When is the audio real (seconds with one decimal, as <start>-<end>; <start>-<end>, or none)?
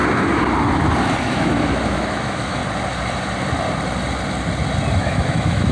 0.0-1.2; 2.6-5.0